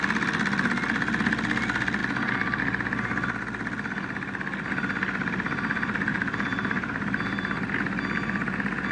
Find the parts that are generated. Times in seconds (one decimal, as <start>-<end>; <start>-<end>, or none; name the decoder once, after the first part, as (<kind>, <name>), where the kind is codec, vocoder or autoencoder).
6.1-7.7 (vocoder, BigVGAN v2)